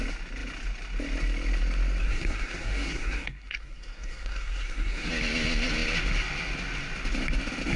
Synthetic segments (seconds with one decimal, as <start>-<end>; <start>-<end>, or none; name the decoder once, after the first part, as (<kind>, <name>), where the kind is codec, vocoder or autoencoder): 2.0-5.1 (codec, SNAC)